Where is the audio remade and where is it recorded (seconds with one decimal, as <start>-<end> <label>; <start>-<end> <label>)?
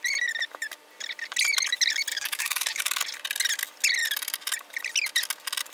0.0-2.1 recorded; 2.1-3.0 remade; 3.0-5.7 recorded